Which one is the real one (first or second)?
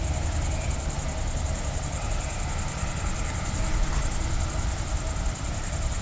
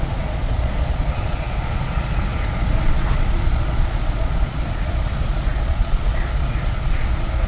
first